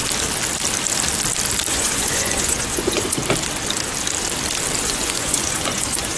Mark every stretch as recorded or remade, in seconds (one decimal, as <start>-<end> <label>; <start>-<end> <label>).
0.0-1.7 recorded; 1.7-3.2 remade; 3.2-4.8 recorded; 4.8-6.2 remade